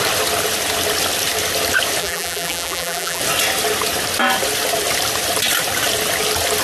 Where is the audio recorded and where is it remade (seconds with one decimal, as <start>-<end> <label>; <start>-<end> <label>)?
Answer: 0.0-2.0 recorded; 2.0-3.2 remade; 3.2-6.6 recorded